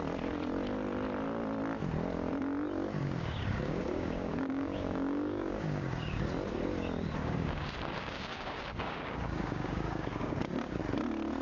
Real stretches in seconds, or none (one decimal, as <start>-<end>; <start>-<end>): 0.0-3.0; 6.3-7.2; 10.8-11.4